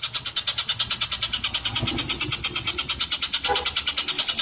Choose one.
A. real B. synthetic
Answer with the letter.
A